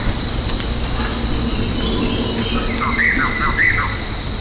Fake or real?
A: real